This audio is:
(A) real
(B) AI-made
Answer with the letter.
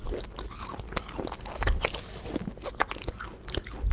A